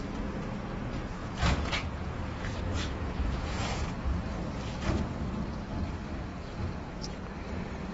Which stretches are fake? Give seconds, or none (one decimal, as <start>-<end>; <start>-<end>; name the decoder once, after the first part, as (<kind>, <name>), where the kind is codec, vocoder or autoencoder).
1.2-3.9 (vocoder, Vocos); 6.3-7.3